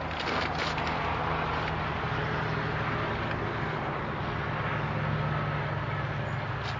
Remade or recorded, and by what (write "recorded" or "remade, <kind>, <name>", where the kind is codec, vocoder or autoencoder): recorded